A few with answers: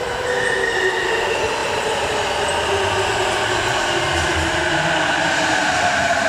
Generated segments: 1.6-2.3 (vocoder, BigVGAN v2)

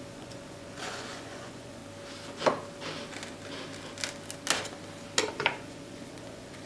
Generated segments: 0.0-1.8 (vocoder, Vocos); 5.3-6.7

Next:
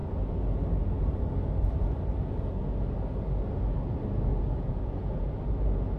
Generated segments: 4.3-5.4 (vocoder, Vocos)

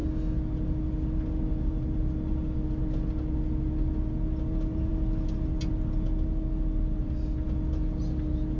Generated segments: none